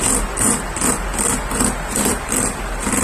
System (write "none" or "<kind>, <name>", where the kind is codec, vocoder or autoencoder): none